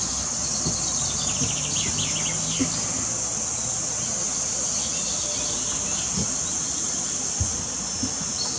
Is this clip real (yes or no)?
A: yes